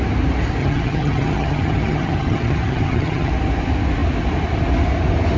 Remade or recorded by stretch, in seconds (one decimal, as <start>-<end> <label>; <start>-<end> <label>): 0.0-0.6 recorded; 0.6-3.3 remade; 3.3-5.4 recorded